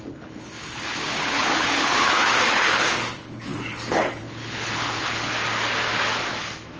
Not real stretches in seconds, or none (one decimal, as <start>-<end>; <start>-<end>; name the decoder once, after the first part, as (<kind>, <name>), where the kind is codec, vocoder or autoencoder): 0.0-5.3 (codec, HILCodec)